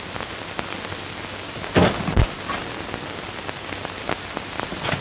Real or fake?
real